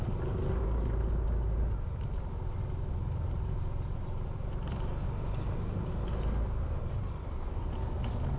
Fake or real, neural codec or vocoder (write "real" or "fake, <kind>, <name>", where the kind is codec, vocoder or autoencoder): real